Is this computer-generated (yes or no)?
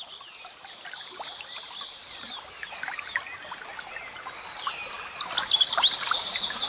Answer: no